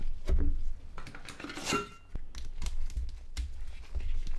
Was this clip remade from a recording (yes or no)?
no